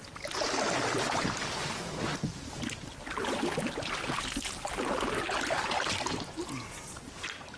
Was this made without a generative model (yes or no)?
yes